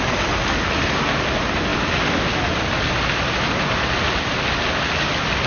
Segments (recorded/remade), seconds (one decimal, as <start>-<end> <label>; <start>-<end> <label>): 0.0-5.5 recorded